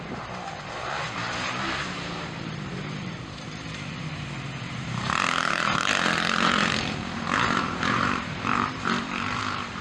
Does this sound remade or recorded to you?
remade